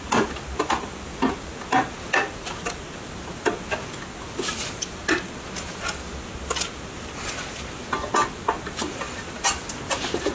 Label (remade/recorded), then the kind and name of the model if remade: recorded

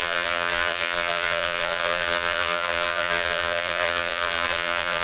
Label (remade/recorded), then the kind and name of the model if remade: remade, vocoder, BigVGAN v2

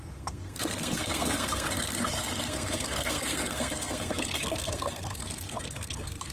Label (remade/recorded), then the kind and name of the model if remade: remade, codec, SNAC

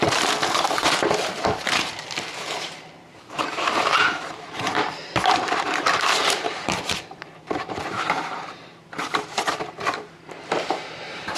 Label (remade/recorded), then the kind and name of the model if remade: remade, vocoder, BigVGAN v2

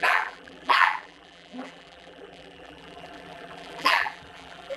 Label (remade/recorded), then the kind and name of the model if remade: remade, vocoder, BigVGAN v2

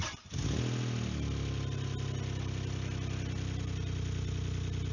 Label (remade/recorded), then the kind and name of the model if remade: recorded